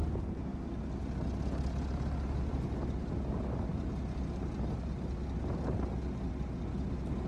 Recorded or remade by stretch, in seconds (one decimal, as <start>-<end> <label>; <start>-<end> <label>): 0.0-7.3 recorded